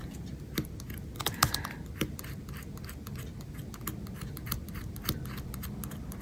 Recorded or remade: recorded